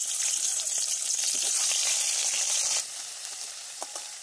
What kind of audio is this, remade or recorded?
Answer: remade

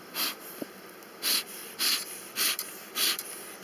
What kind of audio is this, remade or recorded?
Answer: remade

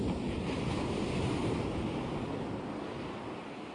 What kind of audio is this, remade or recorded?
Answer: recorded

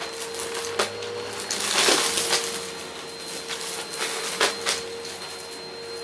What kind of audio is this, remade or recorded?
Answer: recorded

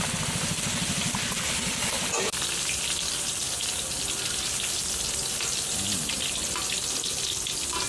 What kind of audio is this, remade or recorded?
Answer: recorded